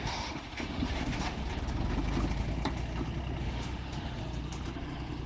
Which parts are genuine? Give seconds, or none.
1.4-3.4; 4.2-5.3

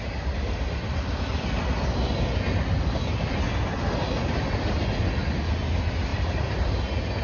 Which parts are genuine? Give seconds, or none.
0.0-7.2

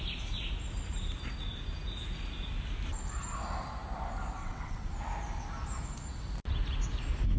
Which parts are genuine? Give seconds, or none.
0.0-4.4; 4.9-7.4

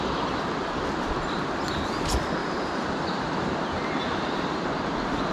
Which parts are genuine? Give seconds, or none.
0.0-2.4; 3.2-5.3

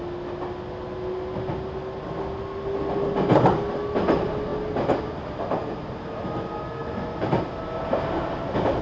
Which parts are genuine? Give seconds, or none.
0.0-6.8; 7.3-8.8

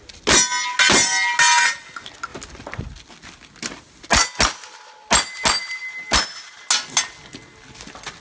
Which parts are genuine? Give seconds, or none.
0.0-8.2

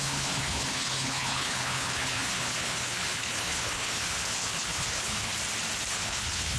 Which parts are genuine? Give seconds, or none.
5.3-5.9